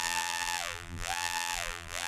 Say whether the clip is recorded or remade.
remade